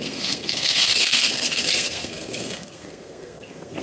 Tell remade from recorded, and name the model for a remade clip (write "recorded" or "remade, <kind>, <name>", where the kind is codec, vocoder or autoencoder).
remade, codec, SNAC